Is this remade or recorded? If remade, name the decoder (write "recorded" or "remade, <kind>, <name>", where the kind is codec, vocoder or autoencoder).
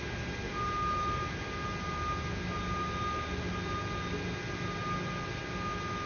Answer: recorded